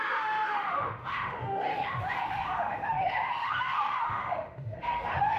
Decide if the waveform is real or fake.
fake